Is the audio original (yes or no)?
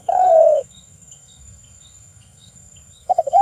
no